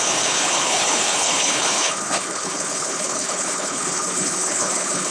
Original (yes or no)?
no